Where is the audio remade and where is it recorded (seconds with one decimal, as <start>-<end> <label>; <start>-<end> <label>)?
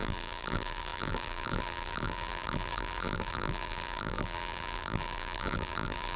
0.0-6.2 remade